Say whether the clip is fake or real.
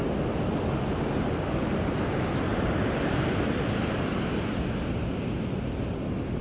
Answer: real